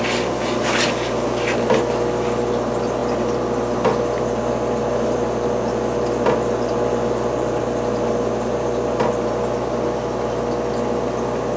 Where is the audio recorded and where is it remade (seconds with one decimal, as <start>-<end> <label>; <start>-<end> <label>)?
0.0-11.6 recorded